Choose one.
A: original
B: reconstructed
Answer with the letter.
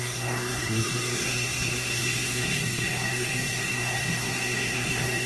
B